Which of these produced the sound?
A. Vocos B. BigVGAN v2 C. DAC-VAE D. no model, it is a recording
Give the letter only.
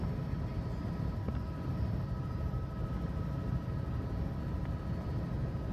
D